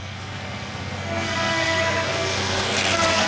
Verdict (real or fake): fake